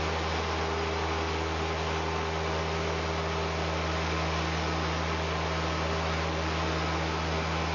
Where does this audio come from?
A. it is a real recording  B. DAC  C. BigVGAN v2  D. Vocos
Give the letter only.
A